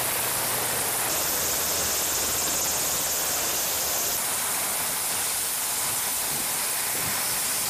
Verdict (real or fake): fake